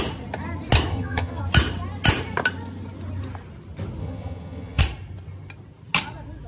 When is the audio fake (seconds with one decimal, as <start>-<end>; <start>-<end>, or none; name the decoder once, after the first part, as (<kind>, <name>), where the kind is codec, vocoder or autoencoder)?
0.9-1.4 (vocoder, HiFi-GAN); 4.0-4.8